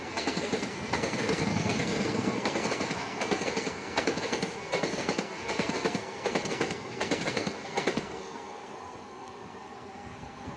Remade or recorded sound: remade